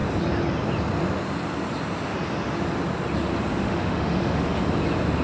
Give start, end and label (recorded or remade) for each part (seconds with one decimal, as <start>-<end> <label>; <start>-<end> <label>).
0.0-3.5 recorded; 3.5-4.6 remade; 4.6-5.2 recorded